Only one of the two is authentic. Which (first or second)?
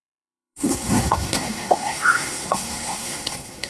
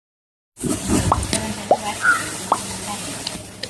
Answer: second